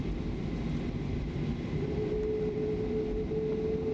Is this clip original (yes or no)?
yes